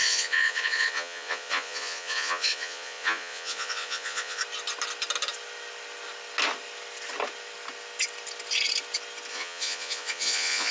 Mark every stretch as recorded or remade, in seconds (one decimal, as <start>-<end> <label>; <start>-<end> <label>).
0.0-4.4 remade; 4.4-9.3 recorded; 9.3-10.7 remade